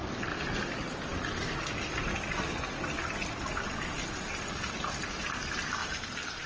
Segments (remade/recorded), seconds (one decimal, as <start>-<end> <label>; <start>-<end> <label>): 0.0-6.5 recorded